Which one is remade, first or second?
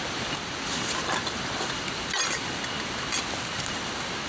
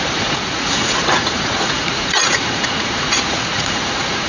second